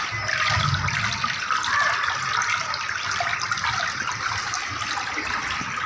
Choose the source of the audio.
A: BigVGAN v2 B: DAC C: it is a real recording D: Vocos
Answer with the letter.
C